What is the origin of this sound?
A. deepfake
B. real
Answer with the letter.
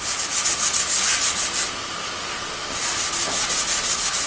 B